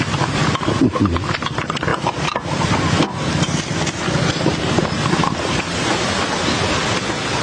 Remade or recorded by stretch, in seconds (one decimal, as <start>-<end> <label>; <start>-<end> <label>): 0.0-7.4 recorded